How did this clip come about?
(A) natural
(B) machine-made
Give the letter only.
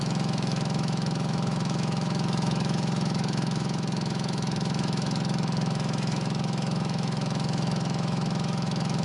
B